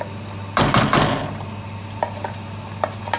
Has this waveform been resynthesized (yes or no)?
no